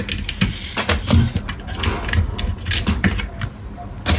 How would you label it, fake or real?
real